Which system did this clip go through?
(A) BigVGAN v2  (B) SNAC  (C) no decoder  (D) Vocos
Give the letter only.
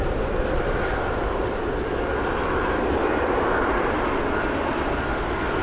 C